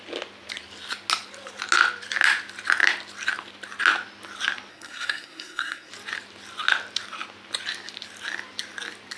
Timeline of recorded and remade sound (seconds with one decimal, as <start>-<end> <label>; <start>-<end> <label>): 0.0-4.7 recorded; 4.7-5.9 remade; 5.9-9.2 recorded

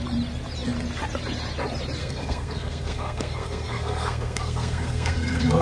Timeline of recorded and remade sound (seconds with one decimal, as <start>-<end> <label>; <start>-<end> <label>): 0.0-2.0 recorded; 2.0-5.6 remade